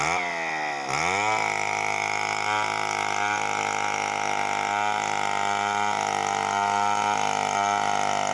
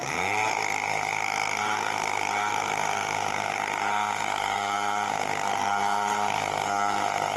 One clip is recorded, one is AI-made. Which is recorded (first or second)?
first